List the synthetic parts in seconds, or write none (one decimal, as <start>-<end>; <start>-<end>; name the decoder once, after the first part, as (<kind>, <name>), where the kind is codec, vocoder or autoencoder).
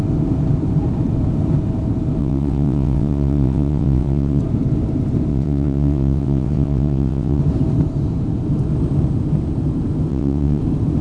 2.2-4.4 (vocoder, WaveNeXt); 5.3-7.4; 10.1-10.6